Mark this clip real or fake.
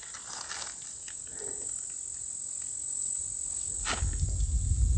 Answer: real